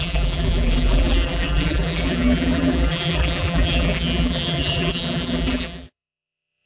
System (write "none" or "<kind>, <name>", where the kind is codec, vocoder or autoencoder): vocoder, BigVGAN v2